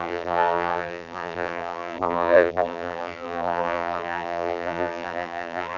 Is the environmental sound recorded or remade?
remade